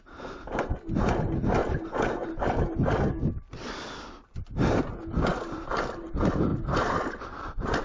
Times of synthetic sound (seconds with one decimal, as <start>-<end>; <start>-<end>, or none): 5.3-6.1; 6.5-7.8